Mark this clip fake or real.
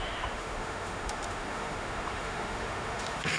fake